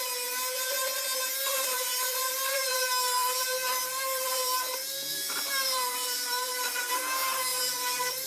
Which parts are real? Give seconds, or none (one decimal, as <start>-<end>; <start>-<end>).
0.0-1.5; 2.7-3.2; 7.0-7.5